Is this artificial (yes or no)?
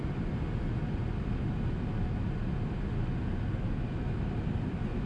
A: no